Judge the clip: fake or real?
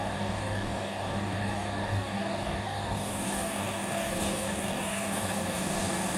fake